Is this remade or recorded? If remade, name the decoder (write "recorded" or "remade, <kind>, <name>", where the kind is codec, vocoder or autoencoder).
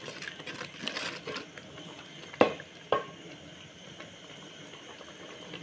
recorded